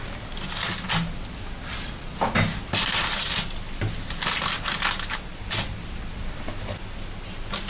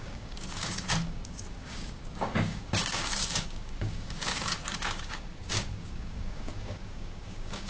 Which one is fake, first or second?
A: second